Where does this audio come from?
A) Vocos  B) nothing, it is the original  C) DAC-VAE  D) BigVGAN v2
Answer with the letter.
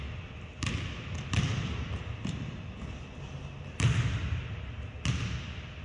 B